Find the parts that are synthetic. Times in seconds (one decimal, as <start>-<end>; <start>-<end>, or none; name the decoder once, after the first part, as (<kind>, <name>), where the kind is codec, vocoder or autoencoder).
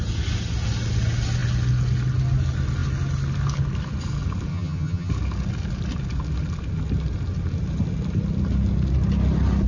4.5-5.1 (vocoder, HiFi-GAN)